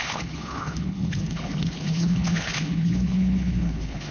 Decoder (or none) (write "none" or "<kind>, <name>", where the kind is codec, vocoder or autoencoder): codec, HILCodec